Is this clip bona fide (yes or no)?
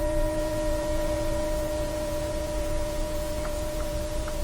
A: no